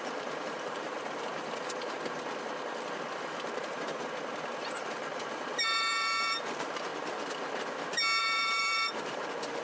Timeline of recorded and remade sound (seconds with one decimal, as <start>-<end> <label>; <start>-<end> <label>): 0.0-1.4 remade; 1.4-3.2 recorded; 3.2-3.9 remade; 3.9-4.6 recorded; 4.6-6.9 remade; 6.9-8.2 recorded; 8.2-9.6 remade